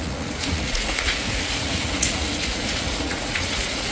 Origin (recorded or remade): remade